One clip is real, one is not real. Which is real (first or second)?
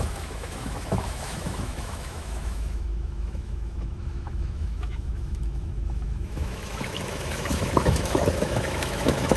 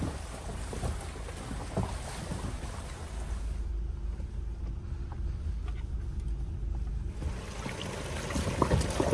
second